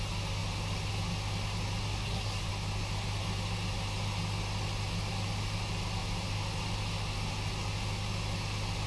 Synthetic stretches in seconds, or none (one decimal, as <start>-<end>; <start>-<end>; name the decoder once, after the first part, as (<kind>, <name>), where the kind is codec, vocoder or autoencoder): 1.8-2.5 (codec, SNAC)